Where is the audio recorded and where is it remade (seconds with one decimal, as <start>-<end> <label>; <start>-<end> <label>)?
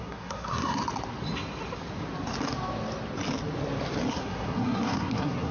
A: 0.0-0.8 remade; 0.8-4.1 recorded; 4.1-5.5 remade